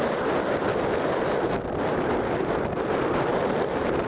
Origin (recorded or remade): recorded